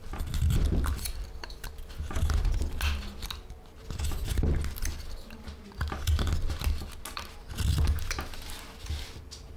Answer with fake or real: real